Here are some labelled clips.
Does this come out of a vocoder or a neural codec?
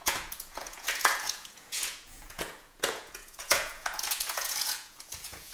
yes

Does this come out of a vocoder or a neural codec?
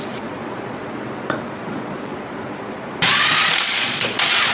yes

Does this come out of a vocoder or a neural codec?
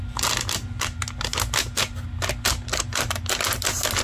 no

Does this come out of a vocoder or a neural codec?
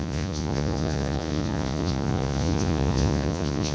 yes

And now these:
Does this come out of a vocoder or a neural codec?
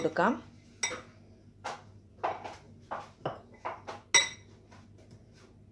no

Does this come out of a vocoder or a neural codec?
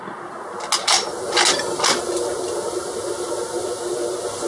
no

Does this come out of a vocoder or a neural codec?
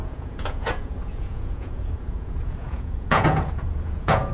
yes